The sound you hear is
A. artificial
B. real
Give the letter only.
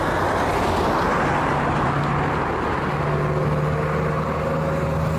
B